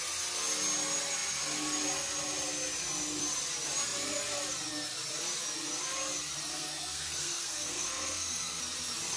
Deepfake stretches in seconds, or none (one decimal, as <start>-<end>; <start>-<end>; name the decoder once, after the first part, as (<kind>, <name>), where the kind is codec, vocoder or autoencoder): 6.5-8.6 (codec, SNAC)